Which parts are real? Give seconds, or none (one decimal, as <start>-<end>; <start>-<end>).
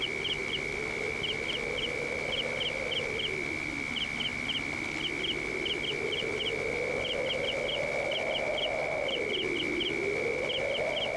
0.0-11.2